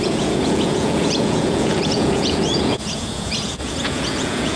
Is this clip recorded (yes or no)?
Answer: no